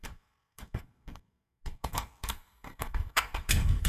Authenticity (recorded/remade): remade